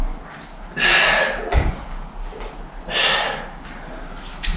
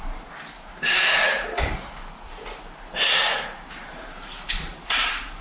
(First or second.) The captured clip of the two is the first